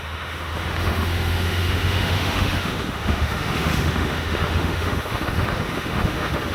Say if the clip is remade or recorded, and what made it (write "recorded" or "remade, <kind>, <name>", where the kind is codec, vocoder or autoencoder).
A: remade, autoencoder, DAC-VAE